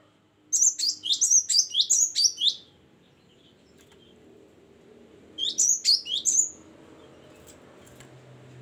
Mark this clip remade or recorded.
recorded